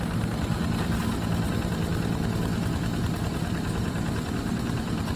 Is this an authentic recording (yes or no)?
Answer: yes